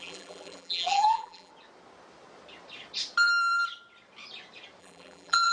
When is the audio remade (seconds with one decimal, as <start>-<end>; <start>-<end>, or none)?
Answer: 0.0-1.5; 4.8-5.5